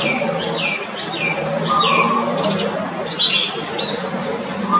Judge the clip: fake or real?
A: real